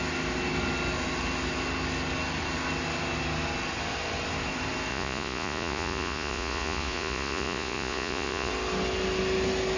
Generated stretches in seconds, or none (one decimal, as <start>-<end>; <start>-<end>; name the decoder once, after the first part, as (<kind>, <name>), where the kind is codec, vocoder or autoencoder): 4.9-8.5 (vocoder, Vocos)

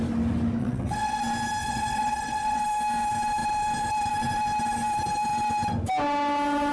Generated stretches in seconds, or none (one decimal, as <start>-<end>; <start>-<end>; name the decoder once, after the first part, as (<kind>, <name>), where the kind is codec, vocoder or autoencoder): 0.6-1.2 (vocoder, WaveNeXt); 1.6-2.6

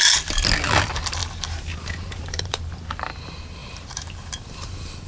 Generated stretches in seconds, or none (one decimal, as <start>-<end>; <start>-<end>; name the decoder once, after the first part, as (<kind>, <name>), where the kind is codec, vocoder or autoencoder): 1.2-2.6 (vocoder, BigVGAN v2); 3.6-5.1

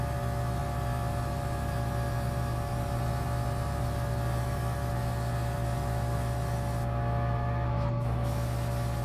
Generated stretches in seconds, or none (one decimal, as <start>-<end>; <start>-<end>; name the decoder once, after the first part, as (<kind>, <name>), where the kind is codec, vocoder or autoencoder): none